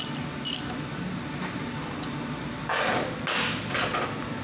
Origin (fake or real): real